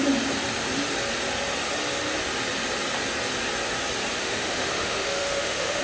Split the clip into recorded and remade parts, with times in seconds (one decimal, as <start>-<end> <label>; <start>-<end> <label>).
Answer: 0.0-4.2 recorded; 4.2-5.8 remade